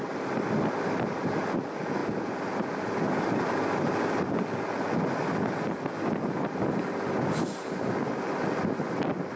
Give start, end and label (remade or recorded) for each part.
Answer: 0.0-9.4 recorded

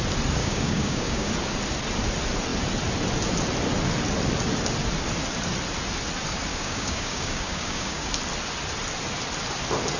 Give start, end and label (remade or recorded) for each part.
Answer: 0.0-0.4 recorded; 0.4-1.3 remade; 1.3-6.5 recorded; 6.5-8.1 remade; 8.1-10.0 recorded